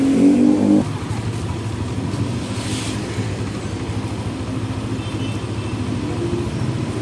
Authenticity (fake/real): real